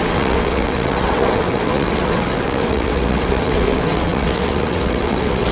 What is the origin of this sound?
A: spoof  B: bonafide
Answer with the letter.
A